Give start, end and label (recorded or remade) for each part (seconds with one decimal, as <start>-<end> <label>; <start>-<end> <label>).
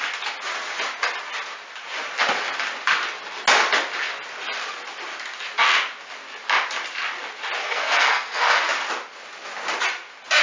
0.0-7.6 recorded; 7.6-8.6 remade; 8.6-10.4 recorded